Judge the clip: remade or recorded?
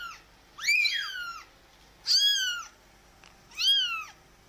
recorded